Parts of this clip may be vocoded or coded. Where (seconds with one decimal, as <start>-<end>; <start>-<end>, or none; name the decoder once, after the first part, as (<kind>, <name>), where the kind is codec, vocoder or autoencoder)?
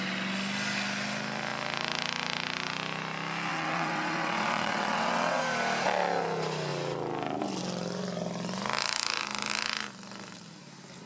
3.5-5.4 (vocoder, WaveNeXt)